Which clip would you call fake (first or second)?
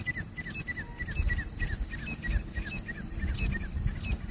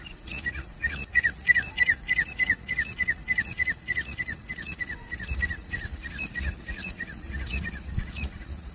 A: second